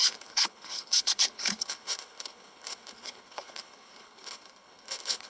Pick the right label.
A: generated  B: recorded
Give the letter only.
A